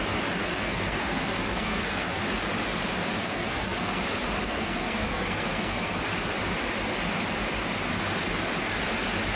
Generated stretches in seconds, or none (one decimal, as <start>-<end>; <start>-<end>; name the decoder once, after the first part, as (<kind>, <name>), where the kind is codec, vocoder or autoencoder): 0.4-2.2 (codec, SNAC); 3.2-4.0; 4.4-6.0

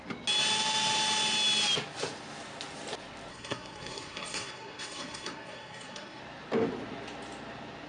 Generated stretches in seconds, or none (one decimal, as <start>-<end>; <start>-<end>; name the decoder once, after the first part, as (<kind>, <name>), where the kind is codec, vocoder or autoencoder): 3.3-6.2 (codec, SNAC)

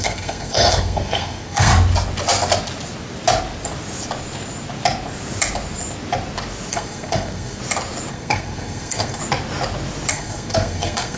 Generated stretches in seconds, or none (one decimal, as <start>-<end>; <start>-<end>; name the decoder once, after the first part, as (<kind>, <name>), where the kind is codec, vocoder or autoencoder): 0.0-1.7 (codec, SNAC); 6.7-7.6; 8.1-9.2; 10.1-11.2

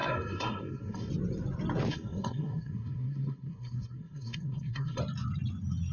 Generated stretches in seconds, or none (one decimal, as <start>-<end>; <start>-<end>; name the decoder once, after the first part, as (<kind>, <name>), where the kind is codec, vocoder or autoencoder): 0.0-1.1 (codec, SNAC); 1.9-5.0